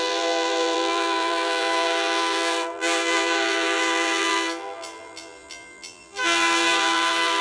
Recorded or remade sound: remade